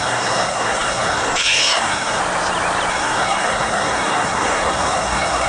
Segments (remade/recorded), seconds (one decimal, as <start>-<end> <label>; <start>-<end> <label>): 0.0-2.2 remade; 2.2-2.9 recorded; 2.9-5.5 remade